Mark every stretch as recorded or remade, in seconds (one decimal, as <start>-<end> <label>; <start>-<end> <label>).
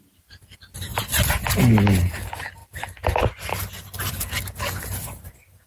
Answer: 0.0-0.9 recorded; 0.9-1.5 remade; 1.5-2.6 recorded; 2.6-4.8 remade; 4.8-5.7 recorded